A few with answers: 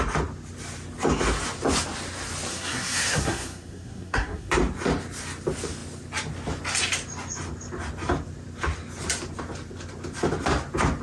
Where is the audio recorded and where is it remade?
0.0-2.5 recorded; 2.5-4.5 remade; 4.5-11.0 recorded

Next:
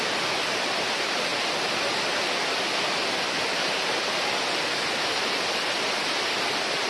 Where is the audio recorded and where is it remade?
0.0-6.9 recorded

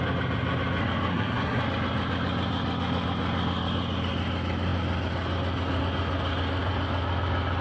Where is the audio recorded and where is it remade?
0.0-1.1 recorded; 1.1-1.6 remade; 1.6-7.6 recorded

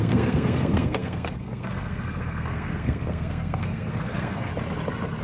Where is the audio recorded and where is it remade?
0.0-4.5 remade; 4.5-5.2 recorded

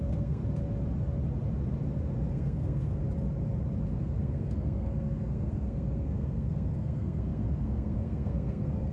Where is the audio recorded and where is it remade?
0.0-0.4 remade; 0.4-2.3 recorded; 2.3-3.0 remade; 3.0-4.0 recorded; 4.0-8.9 remade